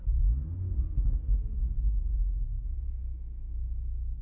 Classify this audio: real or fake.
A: real